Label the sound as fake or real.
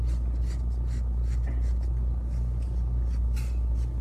real